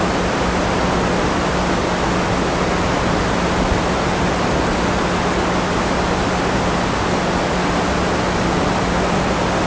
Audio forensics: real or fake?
real